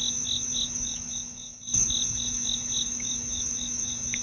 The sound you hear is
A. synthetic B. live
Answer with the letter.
A